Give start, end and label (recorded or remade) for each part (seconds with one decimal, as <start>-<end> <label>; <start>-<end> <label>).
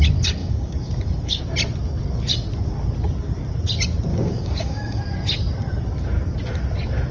0.0-0.4 recorded; 0.4-1.4 remade; 1.4-4.1 recorded; 4.1-5.0 remade; 5.0-7.1 recorded